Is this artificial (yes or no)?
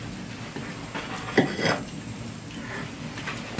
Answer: no